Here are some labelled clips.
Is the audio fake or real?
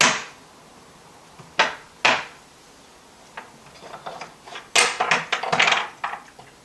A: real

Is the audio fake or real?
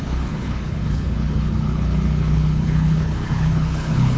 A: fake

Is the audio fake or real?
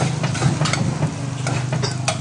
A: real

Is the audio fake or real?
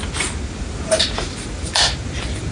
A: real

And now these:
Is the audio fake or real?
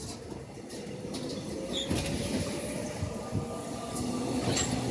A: real